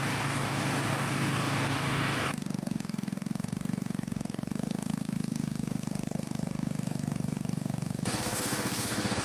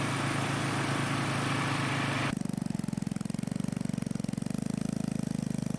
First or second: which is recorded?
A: second